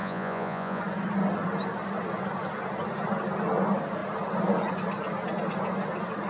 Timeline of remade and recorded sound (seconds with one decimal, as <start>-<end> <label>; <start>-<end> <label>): 0.0-0.8 remade; 0.8-6.3 recorded